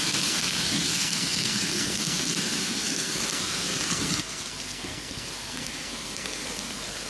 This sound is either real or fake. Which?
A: fake